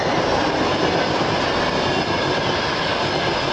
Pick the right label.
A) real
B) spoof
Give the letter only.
A